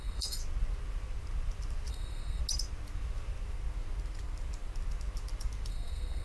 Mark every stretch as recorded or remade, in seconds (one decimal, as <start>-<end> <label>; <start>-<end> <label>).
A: 0.0-0.4 remade; 0.4-1.9 recorded; 1.9-2.4 remade; 2.4-5.7 recorded; 5.7-6.2 remade